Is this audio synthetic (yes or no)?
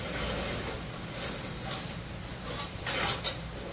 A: no